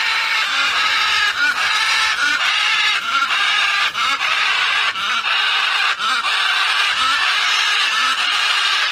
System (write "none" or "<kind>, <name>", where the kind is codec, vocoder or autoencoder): vocoder, BigVGAN v2